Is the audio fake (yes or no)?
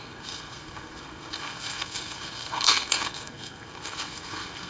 yes